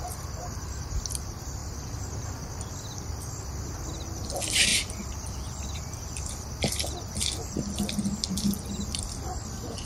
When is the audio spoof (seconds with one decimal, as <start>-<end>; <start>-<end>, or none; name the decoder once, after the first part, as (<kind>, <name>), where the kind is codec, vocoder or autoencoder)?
1.6-2.7 (vocoder, BigVGAN v2); 4.7-9.0